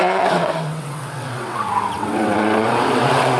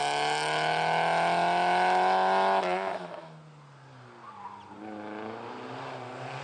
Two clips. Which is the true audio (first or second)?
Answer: second